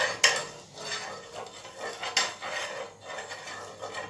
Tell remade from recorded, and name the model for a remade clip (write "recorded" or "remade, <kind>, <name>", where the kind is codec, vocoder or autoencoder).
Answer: recorded